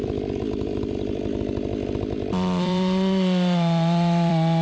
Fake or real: fake